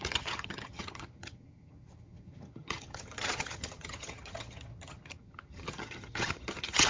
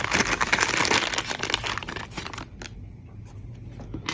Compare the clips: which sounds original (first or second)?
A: second